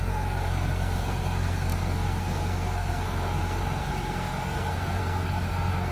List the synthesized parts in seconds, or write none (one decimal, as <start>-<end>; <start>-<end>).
0.0-5.9